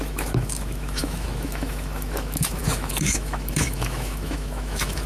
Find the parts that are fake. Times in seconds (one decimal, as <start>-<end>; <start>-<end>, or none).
0.0-5.1